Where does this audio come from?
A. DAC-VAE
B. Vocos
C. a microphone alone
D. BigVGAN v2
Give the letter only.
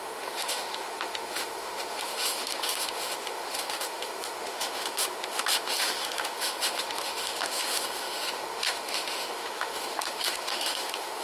A